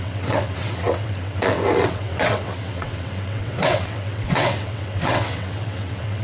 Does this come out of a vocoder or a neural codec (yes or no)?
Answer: yes